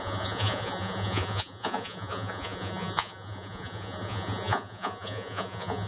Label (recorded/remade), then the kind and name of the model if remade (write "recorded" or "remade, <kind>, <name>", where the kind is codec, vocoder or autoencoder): remade, vocoder, Vocos